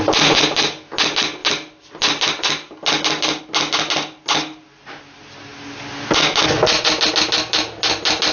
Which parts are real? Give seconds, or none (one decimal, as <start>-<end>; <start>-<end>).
0.0-8.3